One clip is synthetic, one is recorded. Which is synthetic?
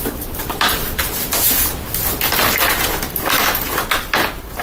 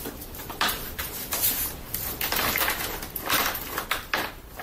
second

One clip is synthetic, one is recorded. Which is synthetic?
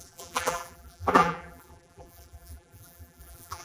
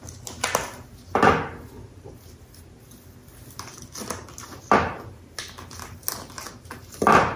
first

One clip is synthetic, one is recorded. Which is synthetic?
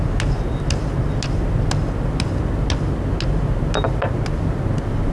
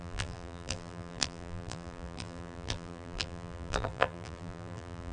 second